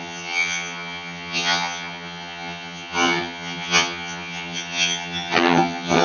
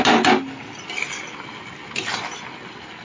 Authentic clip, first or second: second